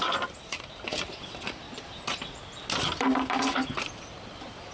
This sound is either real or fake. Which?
real